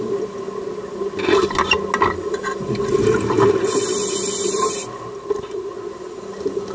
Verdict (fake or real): real